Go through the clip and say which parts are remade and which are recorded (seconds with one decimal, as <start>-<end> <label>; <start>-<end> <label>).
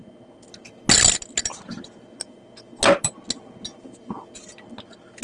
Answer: 0.0-5.2 recorded